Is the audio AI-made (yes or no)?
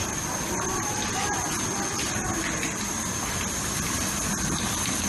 yes